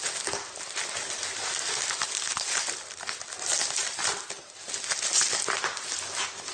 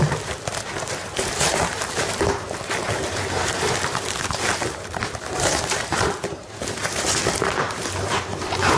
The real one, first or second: first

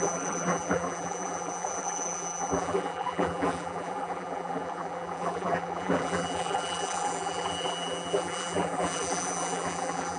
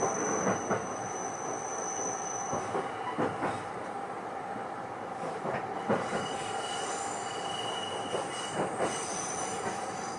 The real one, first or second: second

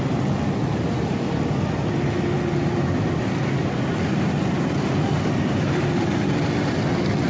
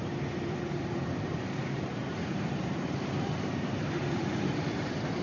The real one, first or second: first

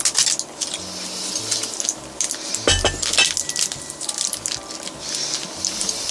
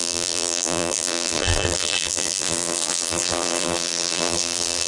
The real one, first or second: first